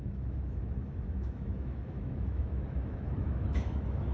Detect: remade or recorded remade